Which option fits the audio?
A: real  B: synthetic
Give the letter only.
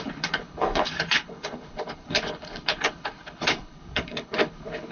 B